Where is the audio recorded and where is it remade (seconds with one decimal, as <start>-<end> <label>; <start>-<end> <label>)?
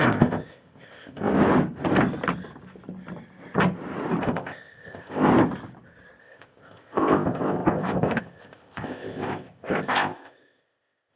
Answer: 0.0-1.3 remade; 1.3-4.2 recorded; 4.2-5.3 remade; 5.3-6.2 recorded; 6.2-11.2 remade